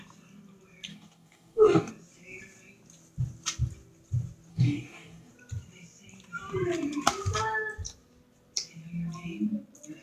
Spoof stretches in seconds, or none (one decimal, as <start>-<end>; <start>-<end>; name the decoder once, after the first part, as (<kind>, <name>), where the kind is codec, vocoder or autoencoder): 0.9-1.9 (codec, DAC); 4.5-5.3